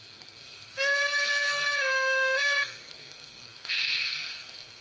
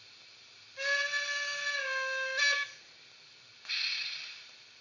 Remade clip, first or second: first